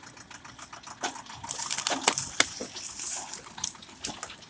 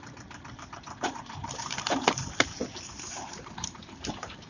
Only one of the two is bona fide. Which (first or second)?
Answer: first